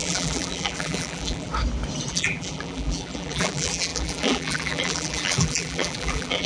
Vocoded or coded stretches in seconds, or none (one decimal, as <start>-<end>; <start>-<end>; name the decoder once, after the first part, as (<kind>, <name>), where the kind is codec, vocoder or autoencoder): 0.0-1.5 (vocoder, BigVGAN v2); 2.1-6.5